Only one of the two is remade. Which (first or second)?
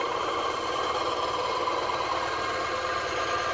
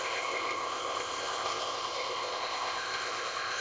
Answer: second